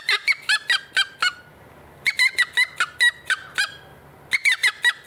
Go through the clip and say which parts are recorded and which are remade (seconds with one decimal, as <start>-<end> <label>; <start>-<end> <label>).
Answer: 0.0-5.1 recorded